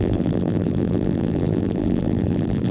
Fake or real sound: fake